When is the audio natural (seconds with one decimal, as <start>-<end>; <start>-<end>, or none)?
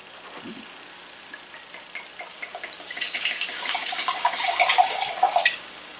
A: 0.0-2.3